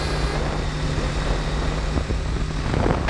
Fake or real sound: real